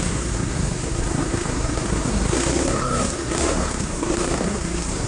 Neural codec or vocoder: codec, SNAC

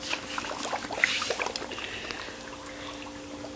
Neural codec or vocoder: none